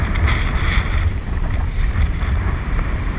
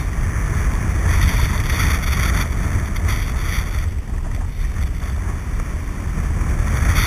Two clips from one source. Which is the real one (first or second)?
second